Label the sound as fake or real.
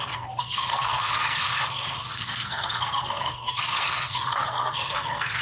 fake